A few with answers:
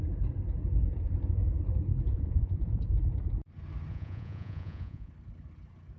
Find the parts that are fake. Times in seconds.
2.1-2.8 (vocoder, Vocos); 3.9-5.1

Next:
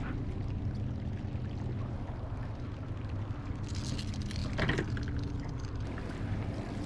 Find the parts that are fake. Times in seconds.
none

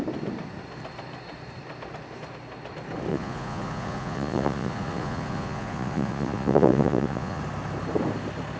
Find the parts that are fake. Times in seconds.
3.1-7.4 (vocoder, Vocos)

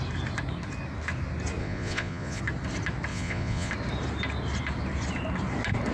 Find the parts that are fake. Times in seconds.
1.6-2.4 (vocoder, Vocos); 3.1-3.7

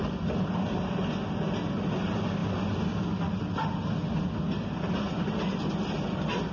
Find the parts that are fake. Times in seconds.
none

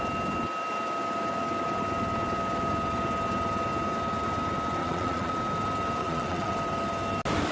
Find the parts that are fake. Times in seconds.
4.8-5.3 (vocoder, Vocos); 6.0-6.5